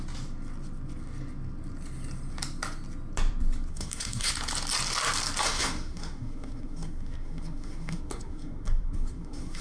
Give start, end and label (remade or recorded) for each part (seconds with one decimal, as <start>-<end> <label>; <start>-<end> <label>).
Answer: 0.0-3.7 recorded; 3.7-4.3 remade; 4.3-5.4 recorded; 5.4-9.6 remade